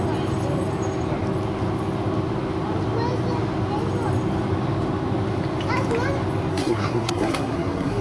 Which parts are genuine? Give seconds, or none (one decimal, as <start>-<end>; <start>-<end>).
0.0-6.5